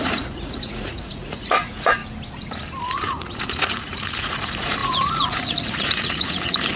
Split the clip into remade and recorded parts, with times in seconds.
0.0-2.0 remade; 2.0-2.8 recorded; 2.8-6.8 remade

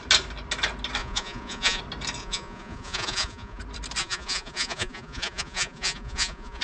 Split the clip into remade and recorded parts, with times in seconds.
0.0-1.0 recorded; 1.0-1.8 remade; 1.8-2.2 recorded; 2.2-3.6 remade; 3.6-4.0 recorded; 4.0-6.6 remade

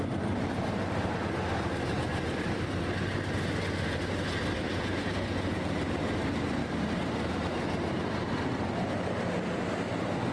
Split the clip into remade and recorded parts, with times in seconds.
0.0-4.7 recorded; 4.7-5.8 remade; 5.8-10.3 recorded

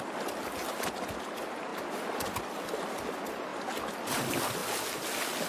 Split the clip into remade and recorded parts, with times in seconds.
0.0-5.5 recorded

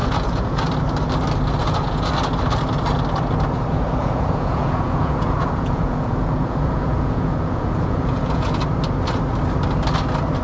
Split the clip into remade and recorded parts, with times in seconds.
0.0-0.6 remade; 0.6-1.6 recorded; 1.6-2.1 remade; 2.1-4.0 recorded; 4.0-8.6 remade; 8.6-10.4 recorded